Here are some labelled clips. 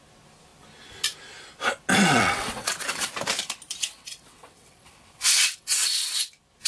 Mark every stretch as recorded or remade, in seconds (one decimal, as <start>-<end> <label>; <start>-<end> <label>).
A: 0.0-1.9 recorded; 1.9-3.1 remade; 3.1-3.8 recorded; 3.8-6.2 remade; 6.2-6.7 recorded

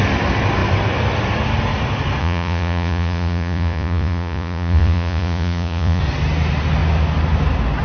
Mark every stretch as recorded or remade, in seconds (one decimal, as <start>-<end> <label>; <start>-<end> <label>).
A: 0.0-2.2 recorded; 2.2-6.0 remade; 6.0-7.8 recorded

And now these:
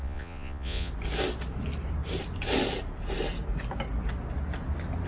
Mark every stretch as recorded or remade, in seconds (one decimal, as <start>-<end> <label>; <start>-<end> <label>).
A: 0.0-0.9 remade; 0.9-5.1 recorded

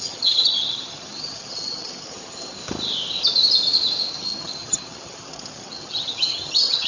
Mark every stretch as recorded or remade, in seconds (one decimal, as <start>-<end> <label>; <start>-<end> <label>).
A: 0.0-2.6 remade; 2.6-4.1 recorded; 4.1-6.9 remade

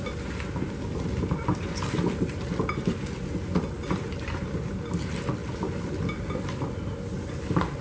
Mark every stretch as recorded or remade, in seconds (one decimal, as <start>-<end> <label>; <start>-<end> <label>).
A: 0.0-7.8 recorded